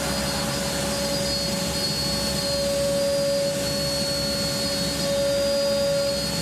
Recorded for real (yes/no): yes